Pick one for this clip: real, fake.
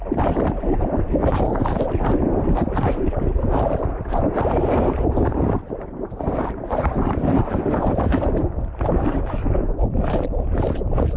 fake